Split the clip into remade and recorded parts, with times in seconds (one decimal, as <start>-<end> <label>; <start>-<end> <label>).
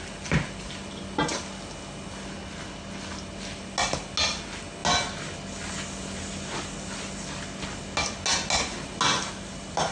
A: 0.0-9.9 recorded